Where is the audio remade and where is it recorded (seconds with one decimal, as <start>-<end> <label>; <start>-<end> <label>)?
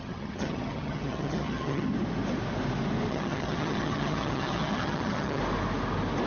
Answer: 0.0-1.9 remade; 1.9-3.1 recorded; 3.1-5.4 remade; 5.4-6.3 recorded